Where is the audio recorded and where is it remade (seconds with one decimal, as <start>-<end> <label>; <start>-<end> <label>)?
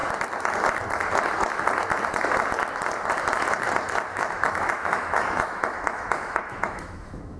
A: 0.0-4.1 recorded; 4.1-7.4 remade